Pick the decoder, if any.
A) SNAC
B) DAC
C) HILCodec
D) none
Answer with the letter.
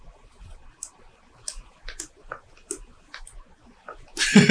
D